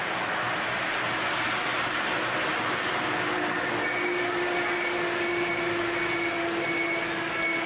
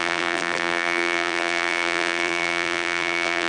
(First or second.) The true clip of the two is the first